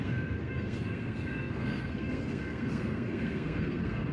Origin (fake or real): fake